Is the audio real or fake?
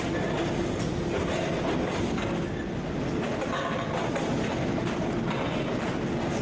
real